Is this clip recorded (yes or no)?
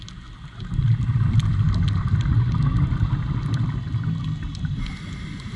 yes